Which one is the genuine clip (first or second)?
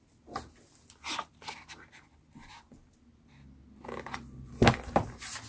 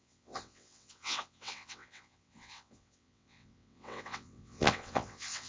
first